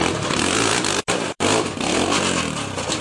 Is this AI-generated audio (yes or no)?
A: yes